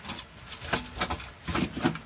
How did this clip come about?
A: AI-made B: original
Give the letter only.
B